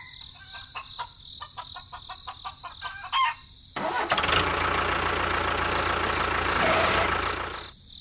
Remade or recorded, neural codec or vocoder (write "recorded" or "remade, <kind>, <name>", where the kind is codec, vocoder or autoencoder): recorded